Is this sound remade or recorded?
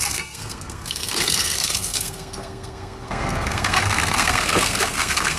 remade